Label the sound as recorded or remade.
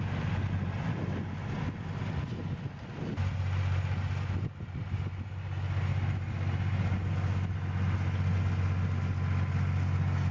recorded